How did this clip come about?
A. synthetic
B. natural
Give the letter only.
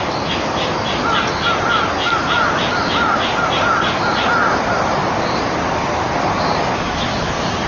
B